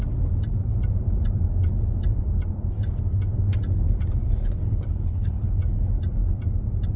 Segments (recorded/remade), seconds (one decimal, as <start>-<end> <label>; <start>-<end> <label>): 0.0-4.2 recorded; 4.2-5.5 remade; 5.5-7.0 recorded